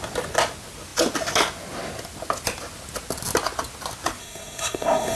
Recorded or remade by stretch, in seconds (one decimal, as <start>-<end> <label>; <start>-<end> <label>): 0.0-4.2 recorded; 4.2-5.2 remade